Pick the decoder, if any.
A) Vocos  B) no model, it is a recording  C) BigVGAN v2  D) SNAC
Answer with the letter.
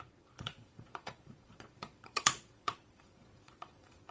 A